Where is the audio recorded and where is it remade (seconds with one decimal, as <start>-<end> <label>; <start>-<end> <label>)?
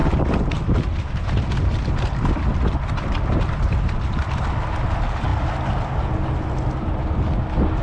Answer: 0.0-4.7 remade; 4.7-7.8 recorded